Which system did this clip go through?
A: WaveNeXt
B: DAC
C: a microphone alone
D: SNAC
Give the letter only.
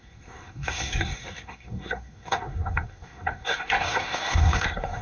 D